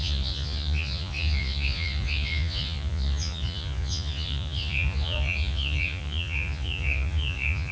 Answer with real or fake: fake